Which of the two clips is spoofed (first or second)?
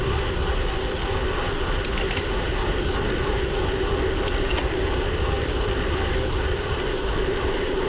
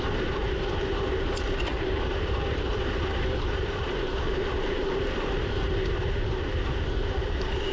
second